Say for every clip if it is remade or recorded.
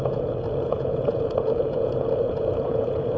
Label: remade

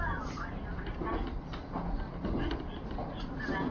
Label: recorded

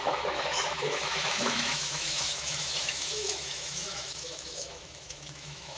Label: remade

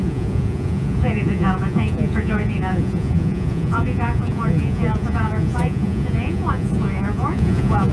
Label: remade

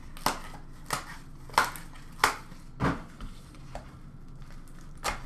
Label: recorded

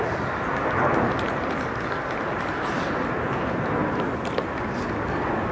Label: recorded